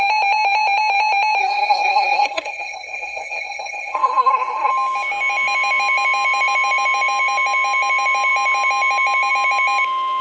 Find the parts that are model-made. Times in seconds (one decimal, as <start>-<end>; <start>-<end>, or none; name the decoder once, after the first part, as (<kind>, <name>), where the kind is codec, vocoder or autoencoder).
1.4-4.7 (codec, SNAC)